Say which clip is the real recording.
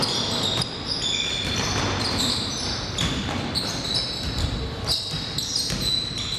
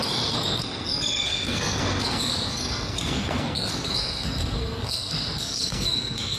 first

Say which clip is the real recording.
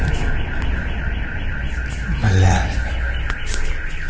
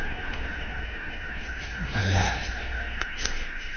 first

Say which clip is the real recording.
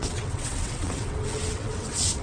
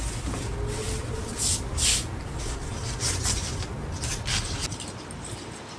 second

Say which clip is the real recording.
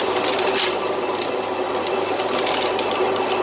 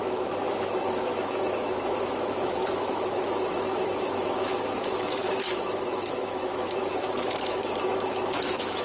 first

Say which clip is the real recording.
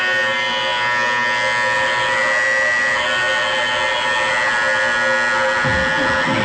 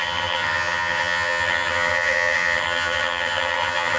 first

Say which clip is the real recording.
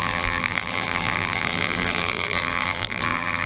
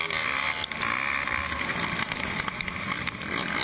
second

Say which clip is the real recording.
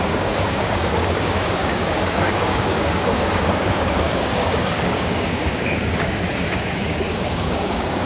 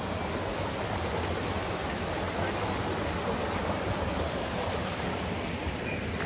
second